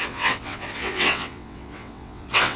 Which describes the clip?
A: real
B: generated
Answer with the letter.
B